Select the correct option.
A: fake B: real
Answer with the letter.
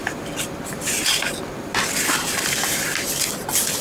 B